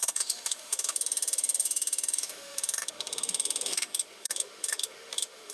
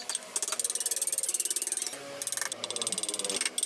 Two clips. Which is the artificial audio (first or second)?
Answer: first